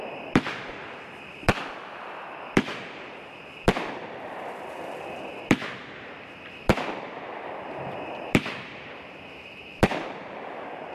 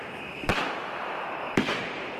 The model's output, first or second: first